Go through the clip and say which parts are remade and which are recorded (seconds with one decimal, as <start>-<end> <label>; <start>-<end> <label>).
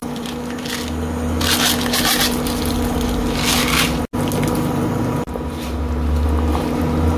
0.0-0.7 remade; 0.7-7.2 recorded